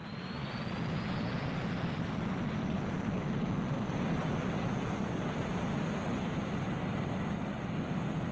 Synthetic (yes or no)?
no